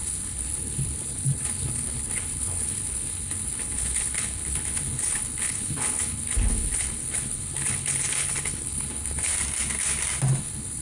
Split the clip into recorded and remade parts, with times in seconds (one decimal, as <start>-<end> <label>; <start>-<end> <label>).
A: 0.0-9.3 remade; 9.3-10.4 recorded; 10.4-10.8 remade